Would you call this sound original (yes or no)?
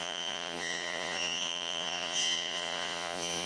no